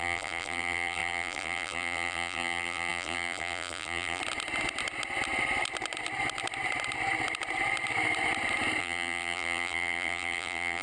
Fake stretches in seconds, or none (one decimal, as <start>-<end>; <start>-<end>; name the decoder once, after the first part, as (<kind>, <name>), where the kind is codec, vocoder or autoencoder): 0.0-4.2 (vocoder, BigVGAN v2); 8.8-10.8